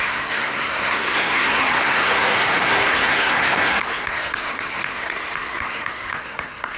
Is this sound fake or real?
fake